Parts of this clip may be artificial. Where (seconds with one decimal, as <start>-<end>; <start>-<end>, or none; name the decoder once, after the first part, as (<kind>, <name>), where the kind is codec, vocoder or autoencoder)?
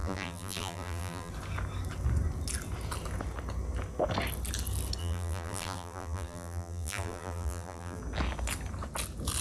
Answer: 0.0-1.3 (vocoder, BigVGAN v2); 5.0-8.0